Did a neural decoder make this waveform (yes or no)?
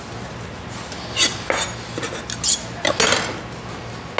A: no